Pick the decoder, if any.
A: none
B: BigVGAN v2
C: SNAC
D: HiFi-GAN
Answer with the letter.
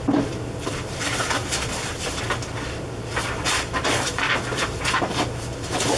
B